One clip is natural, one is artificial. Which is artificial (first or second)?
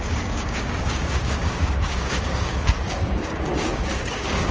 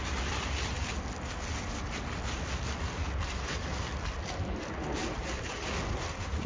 first